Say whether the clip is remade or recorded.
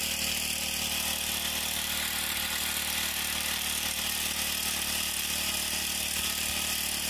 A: recorded